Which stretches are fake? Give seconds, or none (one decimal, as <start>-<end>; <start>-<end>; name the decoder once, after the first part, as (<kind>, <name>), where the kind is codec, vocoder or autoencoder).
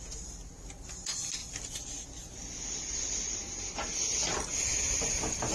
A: none